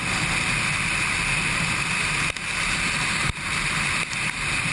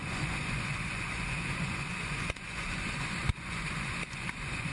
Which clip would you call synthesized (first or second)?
second